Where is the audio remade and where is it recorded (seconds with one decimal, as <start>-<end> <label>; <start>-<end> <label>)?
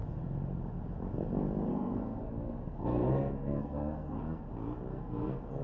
0.0-1.7 recorded; 1.7-4.5 remade; 4.5-4.9 recorded; 4.9-5.6 remade